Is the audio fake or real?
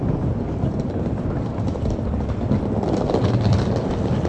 real